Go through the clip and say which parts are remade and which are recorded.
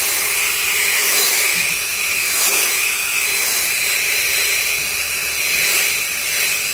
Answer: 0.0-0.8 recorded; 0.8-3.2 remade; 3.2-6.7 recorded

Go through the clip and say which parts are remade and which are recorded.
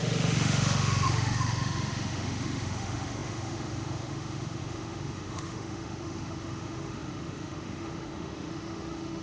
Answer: 0.0-9.2 remade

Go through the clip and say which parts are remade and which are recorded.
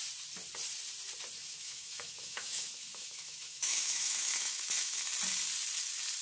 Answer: 0.0-1.4 recorded; 1.4-5.1 remade; 5.1-6.2 recorded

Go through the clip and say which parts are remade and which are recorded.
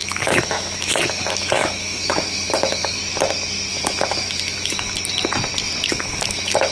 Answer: 0.0-3.0 remade; 3.0-3.7 recorded; 3.7-4.9 remade; 4.9-5.9 recorded; 5.9-6.7 remade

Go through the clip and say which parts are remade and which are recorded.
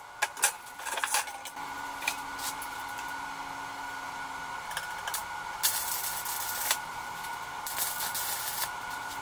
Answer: 0.0-9.2 recorded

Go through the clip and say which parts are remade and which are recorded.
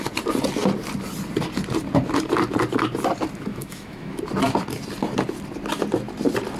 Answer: 0.0-3.5 recorded; 3.5-4.2 remade; 4.2-6.6 recorded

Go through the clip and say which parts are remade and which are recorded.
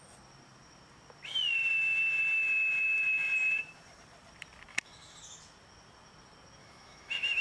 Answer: 0.0-4.7 recorded; 4.7-5.2 remade; 5.2-6.6 recorded; 6.6-7.4 remade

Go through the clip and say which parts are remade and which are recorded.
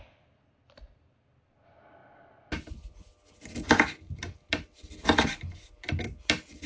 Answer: 0.0-6.7 recorded